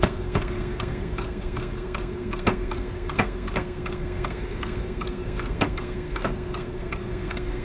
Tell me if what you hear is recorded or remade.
remade